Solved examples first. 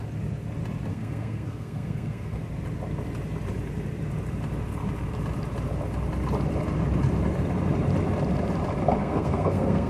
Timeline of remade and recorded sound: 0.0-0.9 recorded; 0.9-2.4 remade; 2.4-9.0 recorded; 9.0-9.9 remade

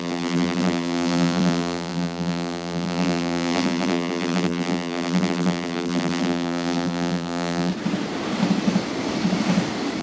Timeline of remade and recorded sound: 0.0-7.7 remade; 7.7-10.0 recorded

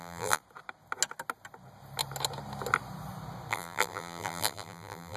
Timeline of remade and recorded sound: 0.0-0.4 remade; 0.4-3.5 recorded; 3.5-5.2 remade

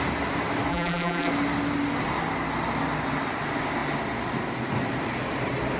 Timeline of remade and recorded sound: 0.0-0.7 recorded; 0.7-1.3 remade; 1.3-5.8 recorded

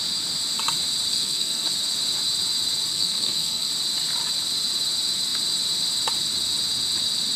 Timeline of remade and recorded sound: 0.0-1.1 recorded; 1.1-1.7 remade; 1.7-2.9 recorded; 2.9-3.7 remade; 3.7-7.4 recorded

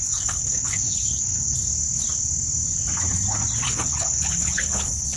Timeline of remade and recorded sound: 0.0-1.6 remade; 1.6-3.7 recorded; 3.7-5.2 remade